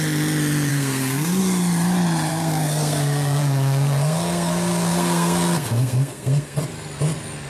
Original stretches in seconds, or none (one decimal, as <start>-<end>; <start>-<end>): 0.0-0.7; 1.4-2.3; 6.6-7.5